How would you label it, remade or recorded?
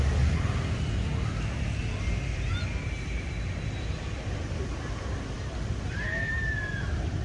recorded